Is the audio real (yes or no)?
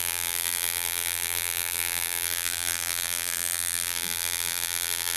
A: no